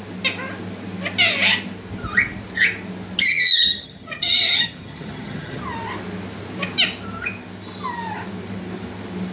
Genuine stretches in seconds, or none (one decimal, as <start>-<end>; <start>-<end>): 0.0-3.3; 5.6-9.3